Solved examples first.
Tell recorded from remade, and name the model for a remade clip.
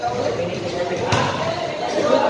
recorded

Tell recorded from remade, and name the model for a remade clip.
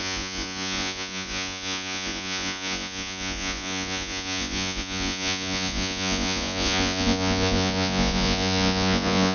remade, vocoder, Vocos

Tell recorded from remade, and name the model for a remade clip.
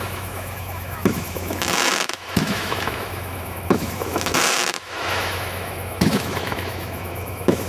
remade, autoencoder, DAC-VAE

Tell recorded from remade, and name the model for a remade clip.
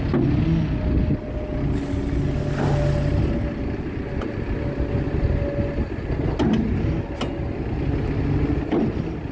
recorded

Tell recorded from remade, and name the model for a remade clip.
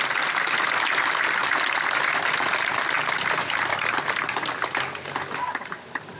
recorded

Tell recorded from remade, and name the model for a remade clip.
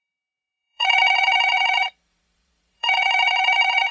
remade, vocoder, Vocos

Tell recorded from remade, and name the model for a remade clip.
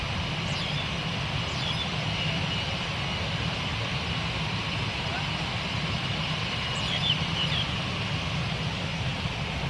recorded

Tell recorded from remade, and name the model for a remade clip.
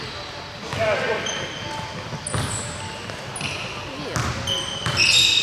recorded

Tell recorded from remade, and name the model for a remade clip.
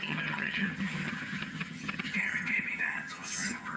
remade, vocoder, HiFi-GAN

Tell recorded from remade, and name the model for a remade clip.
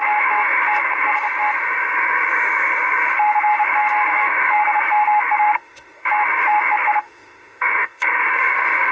remade, autoencoder, DAC-VAE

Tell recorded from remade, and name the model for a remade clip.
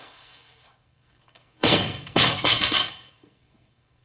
remade, codec, SNAC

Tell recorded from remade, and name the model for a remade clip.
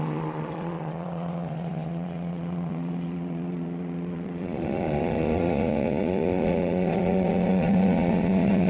remade, vocoder, Vocos